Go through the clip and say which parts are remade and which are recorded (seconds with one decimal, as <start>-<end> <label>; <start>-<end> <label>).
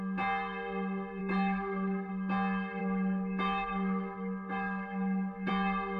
0.0-1.2 recorded; 1.2-2.1 remade; 2.1-2.8 recorded; 2.8-5.5 remade; 5.5-6.0 recorded